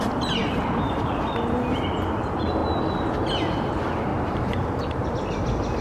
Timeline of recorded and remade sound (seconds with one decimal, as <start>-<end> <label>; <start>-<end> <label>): 0.0-0.4 recorded; 0.4-1.1 remade; 1.1-4.1 recorded; 4.1-5.1 remade; 5.1-5.8 recorded